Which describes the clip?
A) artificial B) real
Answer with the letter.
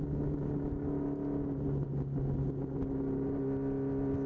B